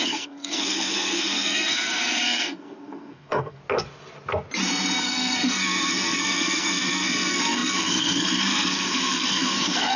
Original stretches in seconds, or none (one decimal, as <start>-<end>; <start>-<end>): 3.6-5.0